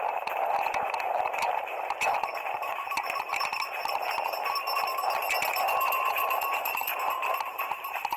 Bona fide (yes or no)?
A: no